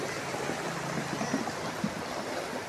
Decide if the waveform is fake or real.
real